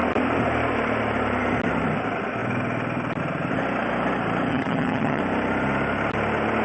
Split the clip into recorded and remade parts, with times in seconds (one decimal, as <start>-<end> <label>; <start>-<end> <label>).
0.0-4.5 recorded; 4.5-5.2 remade; 5.2-6.6 recorded